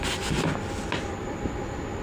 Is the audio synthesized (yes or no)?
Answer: no